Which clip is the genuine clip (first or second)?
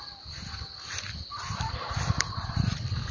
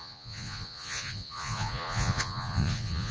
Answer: first